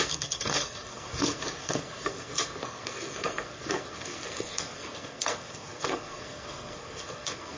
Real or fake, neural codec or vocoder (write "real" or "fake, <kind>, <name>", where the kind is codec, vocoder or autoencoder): fake, codec, SNAC